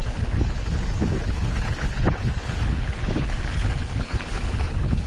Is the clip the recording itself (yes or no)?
no